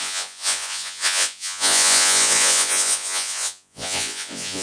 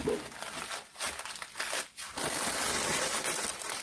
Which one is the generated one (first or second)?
first